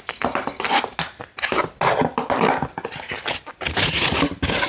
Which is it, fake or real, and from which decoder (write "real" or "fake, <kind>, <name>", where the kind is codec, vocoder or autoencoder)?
real